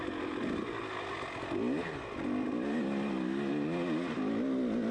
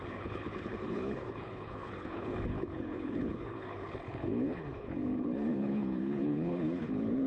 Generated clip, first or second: second